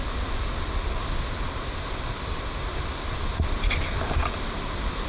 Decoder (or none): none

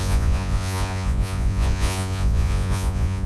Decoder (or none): vocoder, Vocos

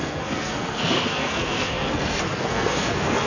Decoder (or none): codec, SNAC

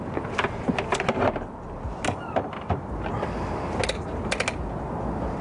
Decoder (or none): none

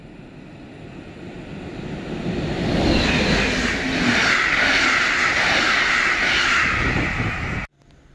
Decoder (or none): none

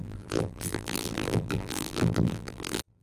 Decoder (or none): vocoder, BigVGAN v2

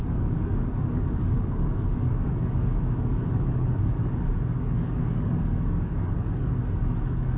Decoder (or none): codec, DAC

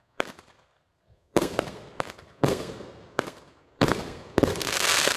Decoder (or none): codec, SNAC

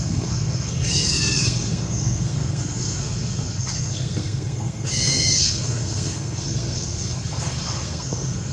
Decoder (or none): codec, SNAC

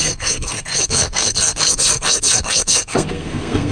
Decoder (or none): codec, SNAC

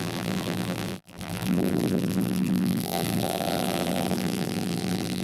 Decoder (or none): vocoder, BigVGAN v2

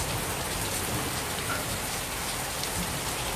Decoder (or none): none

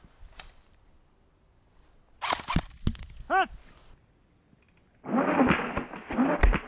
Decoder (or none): none